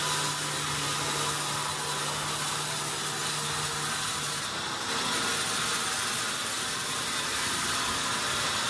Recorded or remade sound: recorded